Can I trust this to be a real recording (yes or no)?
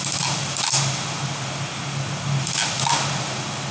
yes